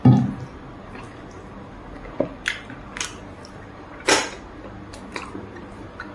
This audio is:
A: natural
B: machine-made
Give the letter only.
A